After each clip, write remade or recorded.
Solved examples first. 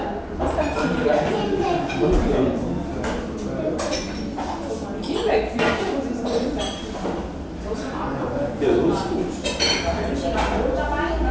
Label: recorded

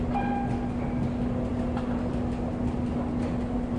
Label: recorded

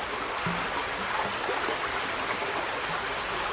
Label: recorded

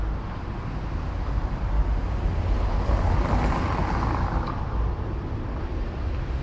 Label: recorded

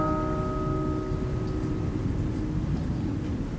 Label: recorded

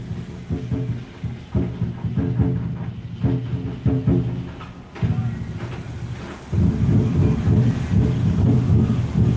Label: recorded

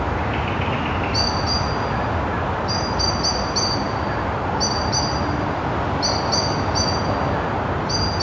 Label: recorded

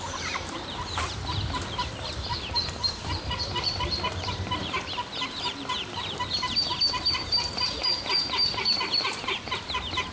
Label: remade